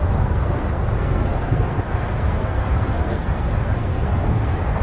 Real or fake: fake